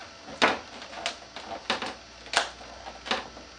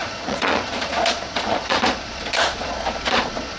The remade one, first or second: second